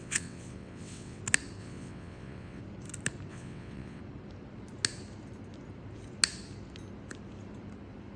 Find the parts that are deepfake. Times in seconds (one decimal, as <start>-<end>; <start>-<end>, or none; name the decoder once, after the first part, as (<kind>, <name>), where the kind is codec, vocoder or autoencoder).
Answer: 0.0-1.2 (vocoder, WaveNeXt); 1.6-2.6; 3.3-4.0